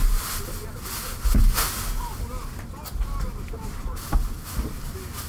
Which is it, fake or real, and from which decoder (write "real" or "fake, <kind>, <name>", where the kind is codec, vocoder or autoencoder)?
real